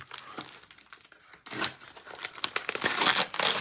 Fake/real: real